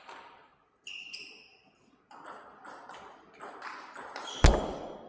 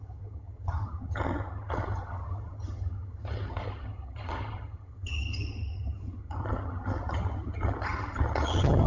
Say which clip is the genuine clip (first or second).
first